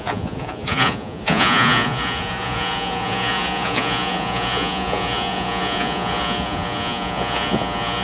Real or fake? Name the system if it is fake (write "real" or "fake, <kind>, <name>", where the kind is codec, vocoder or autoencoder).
fake, vocoder, Vocos